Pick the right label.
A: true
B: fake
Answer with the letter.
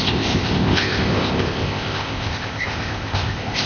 B